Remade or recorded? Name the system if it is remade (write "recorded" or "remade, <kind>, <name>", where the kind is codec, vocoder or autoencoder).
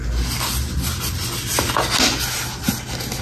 recorded